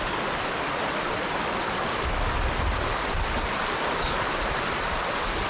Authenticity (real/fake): real